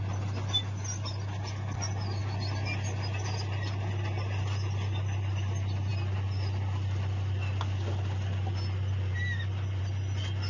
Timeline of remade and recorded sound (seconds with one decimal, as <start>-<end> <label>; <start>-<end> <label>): 0.0-10.5 recorded